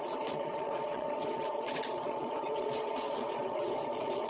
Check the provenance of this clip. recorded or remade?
remade